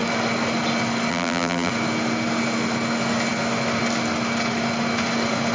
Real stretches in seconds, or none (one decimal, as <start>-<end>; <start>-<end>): 0.0-1.1; 1.7-5.5